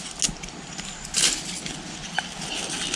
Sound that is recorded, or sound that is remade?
recorded